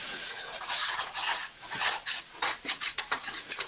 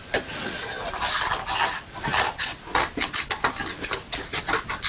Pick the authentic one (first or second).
second